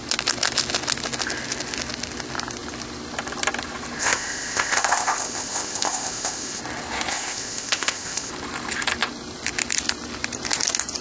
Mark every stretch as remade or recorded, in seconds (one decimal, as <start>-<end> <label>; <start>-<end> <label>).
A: 0.0-4.0 recorded; 4.0-6.6 remade; 6.6-7.1 recorded; 7.1-8.3 remade; 8.3-11.0 recorded